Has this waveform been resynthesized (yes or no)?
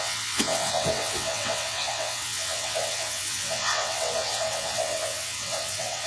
yes